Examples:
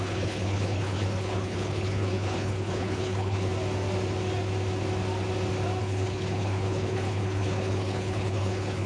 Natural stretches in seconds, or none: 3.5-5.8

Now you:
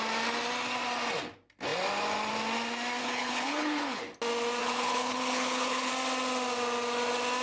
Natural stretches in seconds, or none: 0.0-3.0; 4.0-4.6; 5.9-7.4

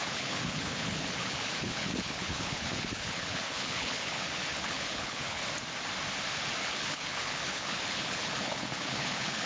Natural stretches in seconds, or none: 5.4-6.6

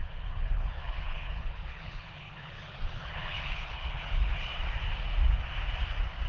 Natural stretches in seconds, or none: 4.5-6.3

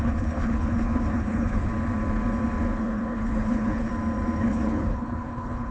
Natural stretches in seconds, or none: 1.7-2.8; 3.9-4.4

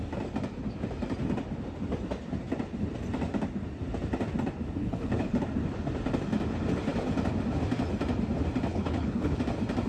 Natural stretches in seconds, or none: 0.0-4.8; 5.4-8.7; 9.4-9.9

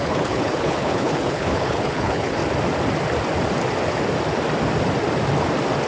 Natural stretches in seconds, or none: 2.4-5.9

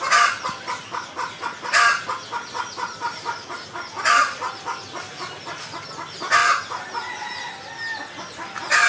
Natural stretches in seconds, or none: 0.0-8.9